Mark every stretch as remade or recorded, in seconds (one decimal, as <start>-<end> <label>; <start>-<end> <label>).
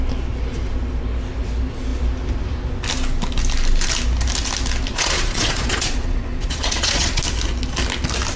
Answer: 0.0-4.9 recorded; 4.9-7.2 remade; 7.2-8.4 recorded